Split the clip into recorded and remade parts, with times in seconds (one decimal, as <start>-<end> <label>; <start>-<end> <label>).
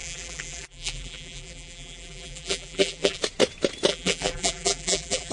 0.0-3.2 remade; 3.2-3.9 recorded; 3.9-5.3 remade